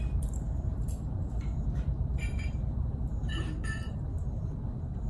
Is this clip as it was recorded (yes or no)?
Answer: no